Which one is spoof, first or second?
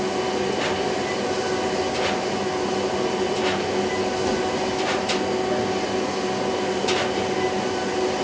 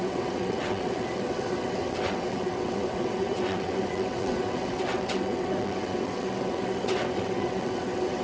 second